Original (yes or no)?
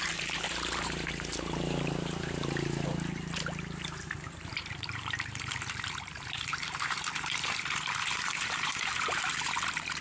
no